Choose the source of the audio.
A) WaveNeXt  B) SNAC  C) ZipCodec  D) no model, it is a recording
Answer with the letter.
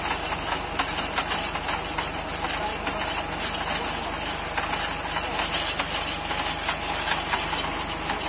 D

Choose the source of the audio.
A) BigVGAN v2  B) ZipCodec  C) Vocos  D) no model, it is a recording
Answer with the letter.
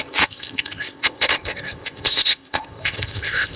B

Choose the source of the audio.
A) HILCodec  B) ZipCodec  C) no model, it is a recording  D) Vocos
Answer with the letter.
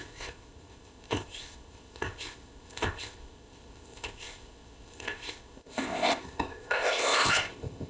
B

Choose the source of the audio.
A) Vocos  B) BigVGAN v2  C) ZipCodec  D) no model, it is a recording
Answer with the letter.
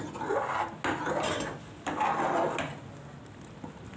D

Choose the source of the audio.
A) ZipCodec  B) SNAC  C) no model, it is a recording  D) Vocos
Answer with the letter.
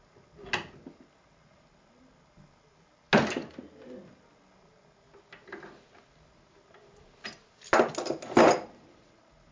C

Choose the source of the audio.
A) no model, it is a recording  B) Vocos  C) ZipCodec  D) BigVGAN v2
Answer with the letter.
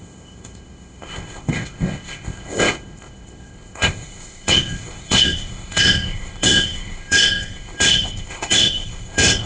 C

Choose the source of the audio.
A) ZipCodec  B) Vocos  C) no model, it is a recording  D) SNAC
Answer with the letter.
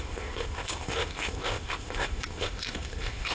A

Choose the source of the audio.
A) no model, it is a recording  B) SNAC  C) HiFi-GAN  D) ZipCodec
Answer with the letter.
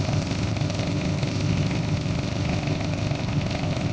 D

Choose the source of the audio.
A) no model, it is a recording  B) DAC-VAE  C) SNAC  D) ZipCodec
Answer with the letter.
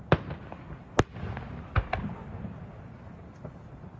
A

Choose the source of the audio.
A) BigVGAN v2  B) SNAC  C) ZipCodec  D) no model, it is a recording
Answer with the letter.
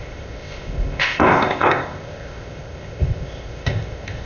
C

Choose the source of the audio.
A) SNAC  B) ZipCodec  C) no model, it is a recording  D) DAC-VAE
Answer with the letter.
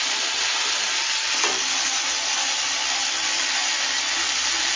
C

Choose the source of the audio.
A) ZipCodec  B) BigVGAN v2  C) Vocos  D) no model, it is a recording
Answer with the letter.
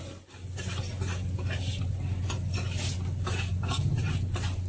D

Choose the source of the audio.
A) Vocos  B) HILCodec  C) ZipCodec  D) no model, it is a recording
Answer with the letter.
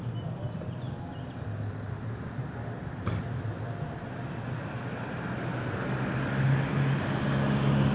D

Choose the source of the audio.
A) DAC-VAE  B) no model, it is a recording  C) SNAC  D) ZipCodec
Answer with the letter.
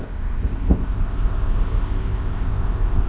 D